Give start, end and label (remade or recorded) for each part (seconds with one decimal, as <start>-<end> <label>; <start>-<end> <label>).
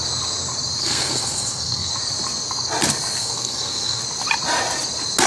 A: 0.0-0.8 recorded; 0.8-1.9 remade; 1.9-3.2 recorded; 3.2-4.0 remade; 4.0-5.3 recorded